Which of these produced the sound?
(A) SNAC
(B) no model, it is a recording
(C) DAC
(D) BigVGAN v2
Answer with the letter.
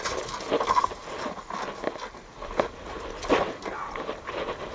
B